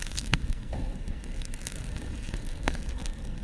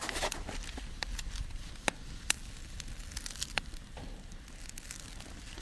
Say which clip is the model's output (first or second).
first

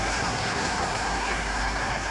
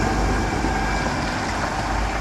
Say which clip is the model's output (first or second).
first